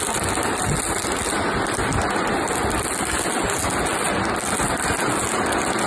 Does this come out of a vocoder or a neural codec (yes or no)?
no